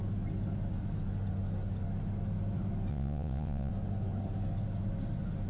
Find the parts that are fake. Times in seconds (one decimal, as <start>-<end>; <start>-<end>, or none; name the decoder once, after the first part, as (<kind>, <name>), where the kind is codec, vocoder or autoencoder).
2.9-3.7 (vocoder, Vocos)